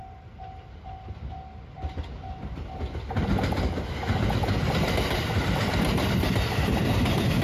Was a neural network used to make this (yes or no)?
no